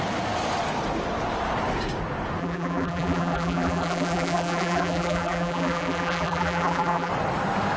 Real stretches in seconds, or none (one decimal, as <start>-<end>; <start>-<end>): 0.0-2.4; 7.1-7.8